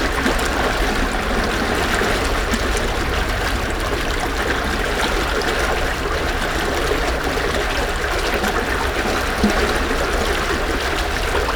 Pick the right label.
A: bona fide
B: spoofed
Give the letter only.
A